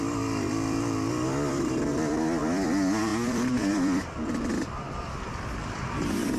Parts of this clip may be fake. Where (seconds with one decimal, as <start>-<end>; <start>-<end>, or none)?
0.0-1.9; 2.4-6.4